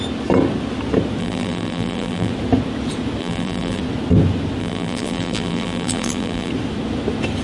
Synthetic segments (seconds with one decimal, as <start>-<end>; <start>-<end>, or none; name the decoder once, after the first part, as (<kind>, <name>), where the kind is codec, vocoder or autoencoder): 1.2-2.3 (vocoder, BigVGAN v2); 3.2-3.8; 4.6-6.5